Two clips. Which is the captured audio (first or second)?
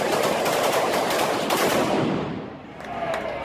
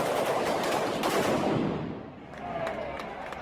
second